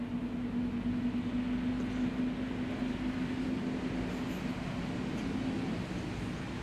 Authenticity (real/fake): real